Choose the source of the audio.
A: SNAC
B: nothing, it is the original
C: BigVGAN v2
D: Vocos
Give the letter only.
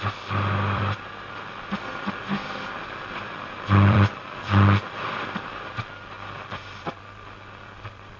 C